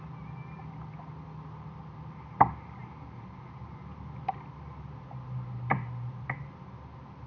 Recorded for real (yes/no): yes